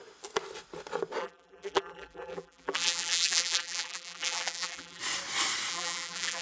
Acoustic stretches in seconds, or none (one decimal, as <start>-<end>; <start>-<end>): 0.0-1.2; 5.0-5.7